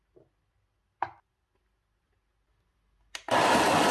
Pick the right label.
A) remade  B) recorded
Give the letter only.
B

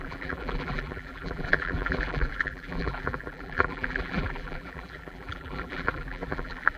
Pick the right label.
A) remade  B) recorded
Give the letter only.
A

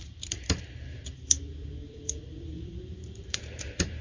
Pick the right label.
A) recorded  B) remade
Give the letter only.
B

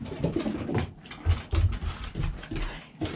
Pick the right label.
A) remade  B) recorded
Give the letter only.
B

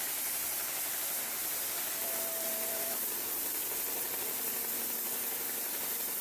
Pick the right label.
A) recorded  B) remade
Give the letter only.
B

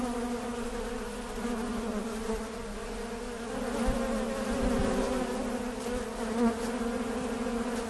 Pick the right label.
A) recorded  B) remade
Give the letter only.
A